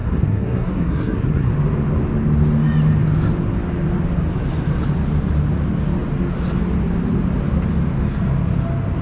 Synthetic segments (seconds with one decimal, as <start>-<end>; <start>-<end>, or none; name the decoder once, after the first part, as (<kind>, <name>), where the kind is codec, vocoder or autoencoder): 0.0-1.5 (codec, SNAC)